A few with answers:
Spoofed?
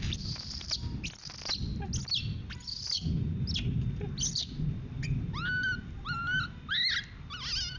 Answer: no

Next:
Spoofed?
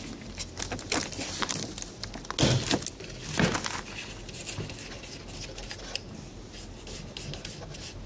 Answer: no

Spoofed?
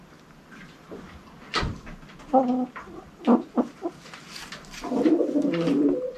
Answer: no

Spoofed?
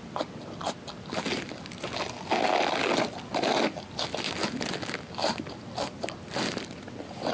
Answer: no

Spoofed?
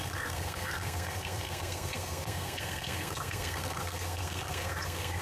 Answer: yes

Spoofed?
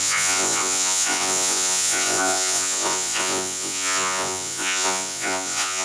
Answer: yes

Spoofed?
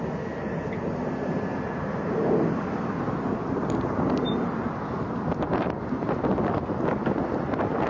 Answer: no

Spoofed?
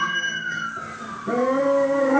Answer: no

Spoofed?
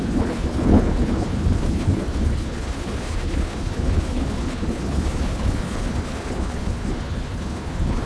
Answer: yes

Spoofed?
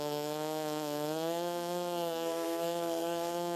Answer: yes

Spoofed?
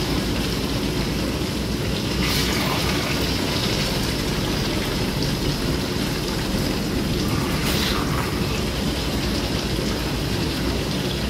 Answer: no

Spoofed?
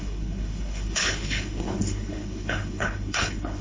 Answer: yes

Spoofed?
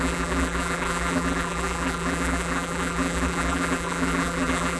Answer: yes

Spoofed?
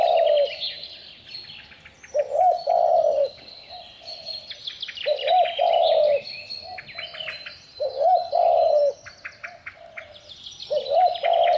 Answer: no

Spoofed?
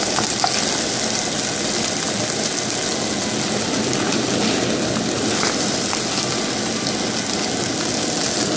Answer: no